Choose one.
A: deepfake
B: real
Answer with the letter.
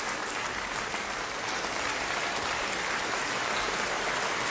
B